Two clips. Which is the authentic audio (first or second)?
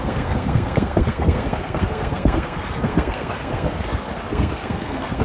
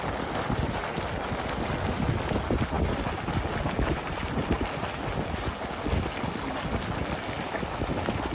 second